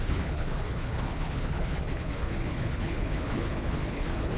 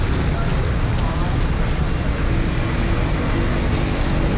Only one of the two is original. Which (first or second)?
second